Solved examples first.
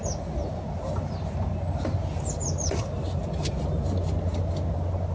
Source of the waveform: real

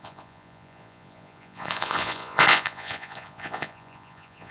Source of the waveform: fake